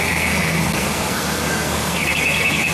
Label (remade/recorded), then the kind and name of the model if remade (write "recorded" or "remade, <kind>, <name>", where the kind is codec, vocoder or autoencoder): remade, codec, SNAC